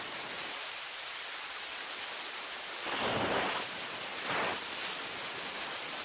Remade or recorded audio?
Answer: recorded